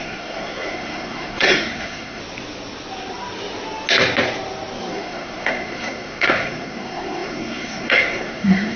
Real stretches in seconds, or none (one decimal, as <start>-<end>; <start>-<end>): 2.2-4.9